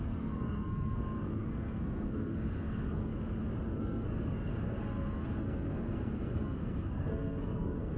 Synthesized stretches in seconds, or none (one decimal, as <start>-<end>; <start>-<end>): 0.0-3.1; 3.8-4.5; 5.4-8.0